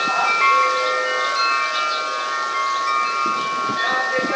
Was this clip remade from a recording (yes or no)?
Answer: no